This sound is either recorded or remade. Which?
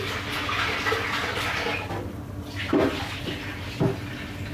recorded